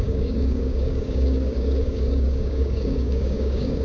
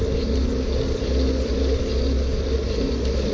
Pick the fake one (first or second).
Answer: first